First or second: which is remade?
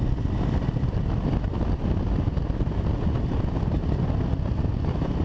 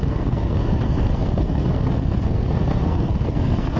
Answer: second